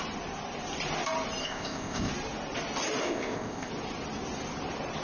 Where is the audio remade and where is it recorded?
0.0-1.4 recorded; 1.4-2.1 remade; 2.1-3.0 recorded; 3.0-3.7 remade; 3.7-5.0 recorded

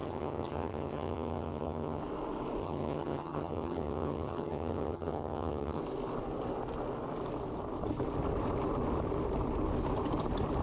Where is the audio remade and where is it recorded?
0.0-2.0 remade; 2.0-2.6 recorded; 2.6-5.8 remade; 5.8-10.6 recorded

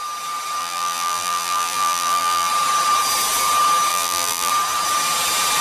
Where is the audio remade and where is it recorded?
0.0-0.6 recorded; 0.6-2.5 remade; 2.5-3.9 recorded; 3.9-4.5 remade; 4.5-5.6 recorded

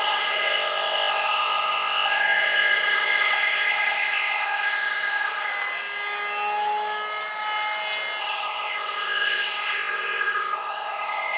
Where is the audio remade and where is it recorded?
0.0-5.5 remade; 5.5-8.2 recorded; 8.2-11.4 remade

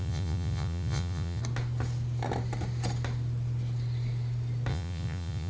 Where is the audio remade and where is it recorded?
0.0-1.4 remade; 1.4-4.7 recorded; 4.7-5.5 remade